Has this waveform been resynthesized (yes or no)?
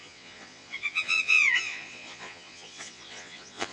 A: yes